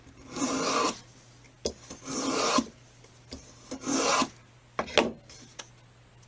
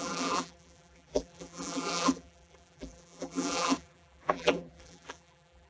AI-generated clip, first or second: second